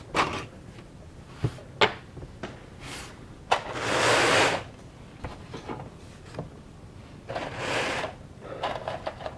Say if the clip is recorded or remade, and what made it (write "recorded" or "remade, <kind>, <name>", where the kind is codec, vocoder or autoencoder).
recorded